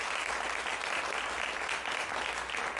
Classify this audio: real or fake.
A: real